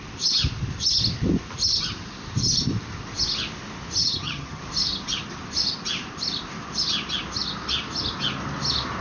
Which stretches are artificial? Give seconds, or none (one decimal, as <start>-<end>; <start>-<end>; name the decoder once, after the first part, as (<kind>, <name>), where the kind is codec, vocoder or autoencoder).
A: 4.0-4.6 (vocoder, HiFi-GAN)